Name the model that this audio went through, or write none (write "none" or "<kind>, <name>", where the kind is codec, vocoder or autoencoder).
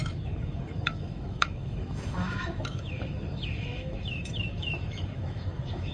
autoencoder, DAC-VAE